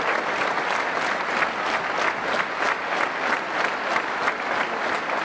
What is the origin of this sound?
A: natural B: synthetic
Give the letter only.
A